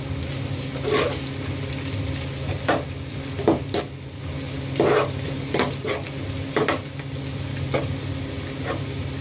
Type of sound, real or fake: real